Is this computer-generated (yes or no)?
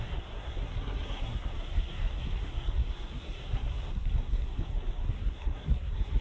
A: yes